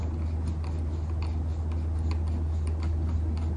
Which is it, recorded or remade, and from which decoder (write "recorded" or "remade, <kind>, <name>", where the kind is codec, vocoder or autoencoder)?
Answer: recorded